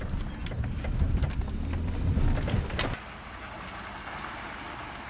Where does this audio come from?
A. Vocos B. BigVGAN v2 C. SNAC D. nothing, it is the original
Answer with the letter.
D